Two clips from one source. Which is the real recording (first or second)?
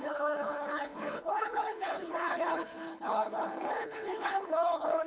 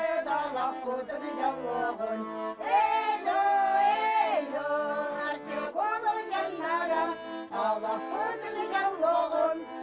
second